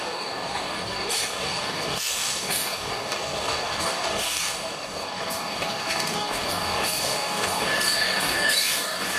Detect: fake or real fake